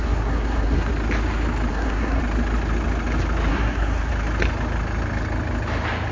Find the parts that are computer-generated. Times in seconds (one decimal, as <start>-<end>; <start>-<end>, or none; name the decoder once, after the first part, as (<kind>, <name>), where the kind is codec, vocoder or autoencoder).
0.0-0.9 (codec, SNAC); 1.7-2.2; 3.5-4.1